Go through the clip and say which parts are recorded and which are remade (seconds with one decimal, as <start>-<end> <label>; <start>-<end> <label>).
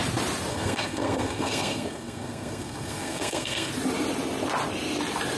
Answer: 0.0-0.5 recorded; 0.5-3.7 remade; 3.7-5.4 recorded